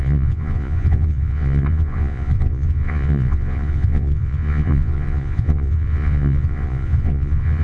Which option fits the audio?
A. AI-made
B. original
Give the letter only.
A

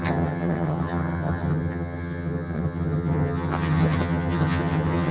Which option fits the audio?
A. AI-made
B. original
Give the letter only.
A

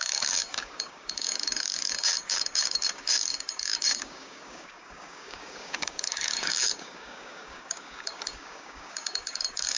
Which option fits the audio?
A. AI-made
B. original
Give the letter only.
A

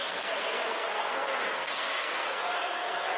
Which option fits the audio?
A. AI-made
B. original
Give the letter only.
A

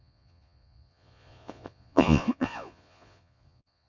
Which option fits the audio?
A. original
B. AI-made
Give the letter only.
B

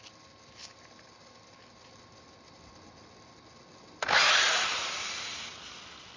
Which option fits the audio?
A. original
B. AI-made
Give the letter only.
A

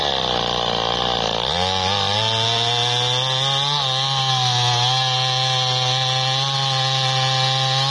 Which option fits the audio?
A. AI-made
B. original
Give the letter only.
B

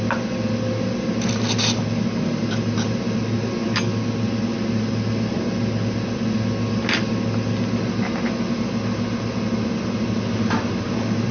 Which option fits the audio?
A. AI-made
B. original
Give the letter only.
B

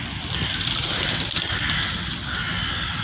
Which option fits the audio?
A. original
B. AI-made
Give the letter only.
A